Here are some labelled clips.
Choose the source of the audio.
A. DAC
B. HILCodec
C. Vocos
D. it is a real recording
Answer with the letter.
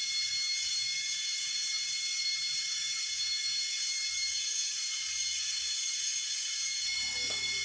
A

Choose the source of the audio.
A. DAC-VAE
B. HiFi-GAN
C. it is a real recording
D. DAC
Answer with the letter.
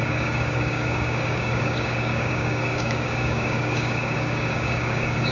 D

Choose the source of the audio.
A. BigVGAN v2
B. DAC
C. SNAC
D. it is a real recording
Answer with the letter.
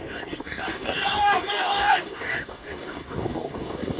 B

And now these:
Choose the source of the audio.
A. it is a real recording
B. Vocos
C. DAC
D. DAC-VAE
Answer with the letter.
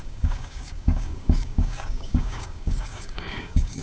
C